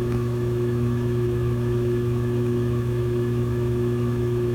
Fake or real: fake